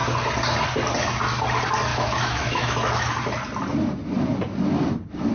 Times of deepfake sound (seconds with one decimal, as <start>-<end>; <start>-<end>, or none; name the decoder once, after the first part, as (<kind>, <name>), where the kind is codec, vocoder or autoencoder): 1.9-3.1 (autoencoder, DAC-VAE)